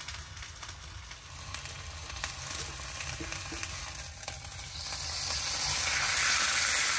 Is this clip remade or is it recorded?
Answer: recorded